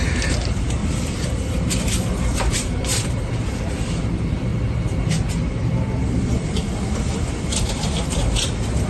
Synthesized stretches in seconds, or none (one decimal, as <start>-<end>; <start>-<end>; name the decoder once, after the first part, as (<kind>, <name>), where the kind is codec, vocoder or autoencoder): 0.0-0.8 (vocoder, BigVGAN v2); 1.5-4.5; 7.6-8.9